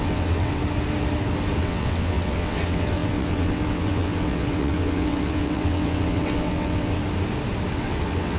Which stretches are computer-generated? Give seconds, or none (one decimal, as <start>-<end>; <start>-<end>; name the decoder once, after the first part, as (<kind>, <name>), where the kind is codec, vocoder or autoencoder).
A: 0.0-0.6 (vocoder, WaveNeXt); 1.6-7.0; 7.7-8.4